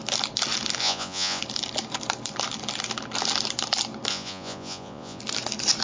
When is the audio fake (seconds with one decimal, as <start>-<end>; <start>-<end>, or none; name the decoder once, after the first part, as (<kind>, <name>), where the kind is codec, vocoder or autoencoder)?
0.8-1.4 (vocoder, Vocos); 4.1-5.2